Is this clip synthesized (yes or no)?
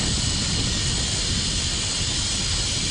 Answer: no